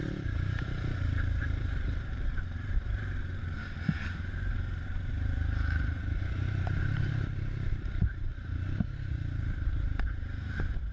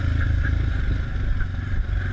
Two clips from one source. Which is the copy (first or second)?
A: first